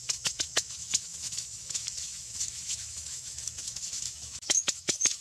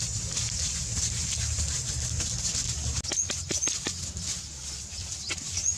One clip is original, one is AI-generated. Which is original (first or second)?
second